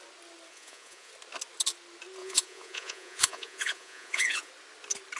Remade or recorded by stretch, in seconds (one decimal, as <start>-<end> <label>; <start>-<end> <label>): 0.0-0.5 recorded; 0.5-1.1 remade; 1.1-2.2 recorded; 2.2-4.5 remade; 4.5-5.2 recorded